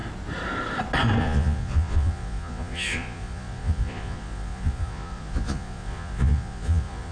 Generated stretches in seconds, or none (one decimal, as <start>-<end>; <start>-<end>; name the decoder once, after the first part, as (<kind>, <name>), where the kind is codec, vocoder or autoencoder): 1.2-7.1 (vocoder, Vocos)